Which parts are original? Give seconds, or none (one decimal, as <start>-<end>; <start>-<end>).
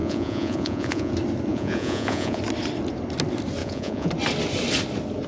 1.1-1.5; 2.4-3.6; 4.1-5.3